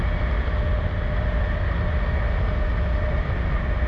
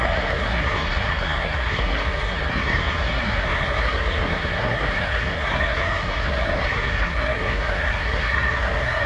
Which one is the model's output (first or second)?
second